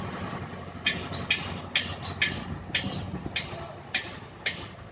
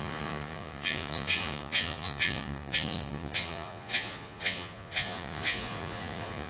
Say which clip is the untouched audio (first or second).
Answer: first